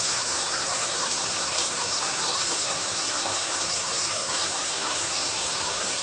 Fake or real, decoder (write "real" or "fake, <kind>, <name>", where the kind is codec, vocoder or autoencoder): fake, codec, SNAC